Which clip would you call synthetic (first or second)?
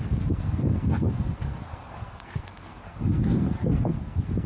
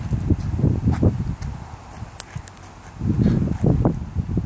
first